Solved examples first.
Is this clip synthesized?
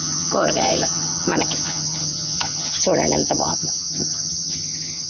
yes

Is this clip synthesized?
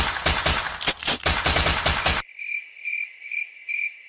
no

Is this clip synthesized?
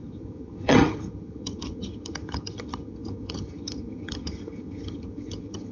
yes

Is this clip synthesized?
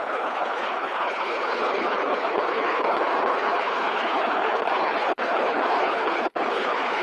yes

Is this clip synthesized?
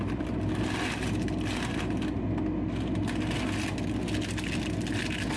no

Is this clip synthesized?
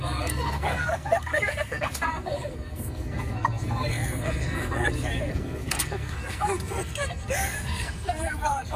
yes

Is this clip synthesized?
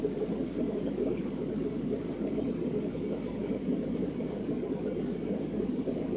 yes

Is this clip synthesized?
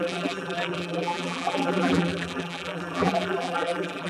yes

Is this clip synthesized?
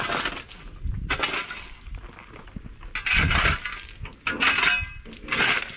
no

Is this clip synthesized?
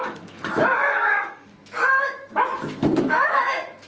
yes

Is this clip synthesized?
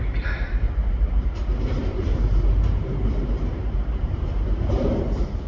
yes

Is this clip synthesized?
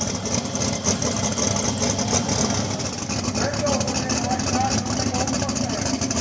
no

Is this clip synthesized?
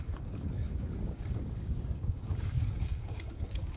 yes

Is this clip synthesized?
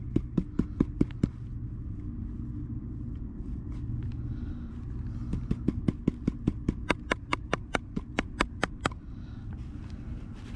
no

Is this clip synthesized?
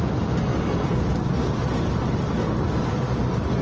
no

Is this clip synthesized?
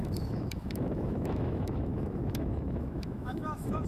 yes